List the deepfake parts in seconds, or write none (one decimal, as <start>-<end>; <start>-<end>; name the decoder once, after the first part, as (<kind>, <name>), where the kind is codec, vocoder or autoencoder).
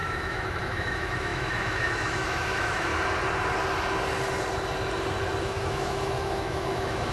0.0-2.9 (autoencoder, DAC-VAE); 5.4-7.1